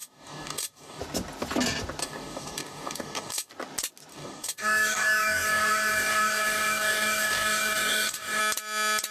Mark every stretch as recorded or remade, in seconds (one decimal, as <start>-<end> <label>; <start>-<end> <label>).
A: 0.0-1.0 remade; 1.0-2.0 recorded; 2.0-3.5 remade; 3.5-4.1 recorded; 4.1-8.4 remade; 8.4-9.1 recorded